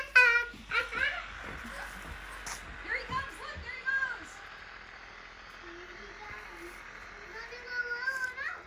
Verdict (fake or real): real